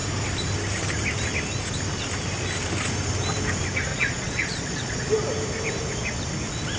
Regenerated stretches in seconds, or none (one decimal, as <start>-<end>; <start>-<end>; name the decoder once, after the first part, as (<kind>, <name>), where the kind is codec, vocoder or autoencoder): 3.9-5.1 (vocoder, Vocos)